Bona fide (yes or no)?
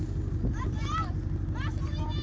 yes